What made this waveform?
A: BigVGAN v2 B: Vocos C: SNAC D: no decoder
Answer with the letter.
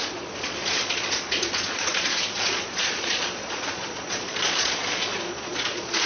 B